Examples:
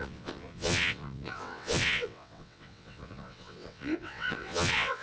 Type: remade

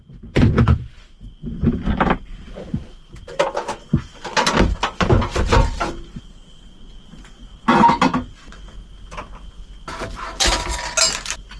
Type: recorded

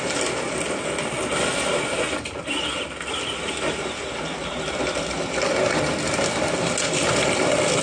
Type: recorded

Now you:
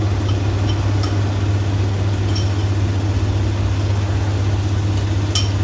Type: recorded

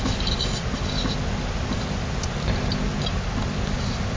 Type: recorded